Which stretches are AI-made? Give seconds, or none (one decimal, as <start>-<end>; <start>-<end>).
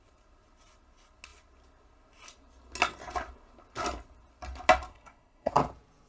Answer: 4.9-5.5